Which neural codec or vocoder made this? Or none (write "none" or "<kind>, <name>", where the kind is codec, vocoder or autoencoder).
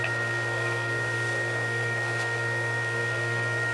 codec, SNAC